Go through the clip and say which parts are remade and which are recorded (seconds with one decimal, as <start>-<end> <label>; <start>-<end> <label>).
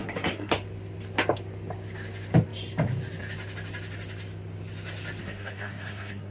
0.0-0.5 remade; 0.5-5.2 recorded; 5.2-6.3 remade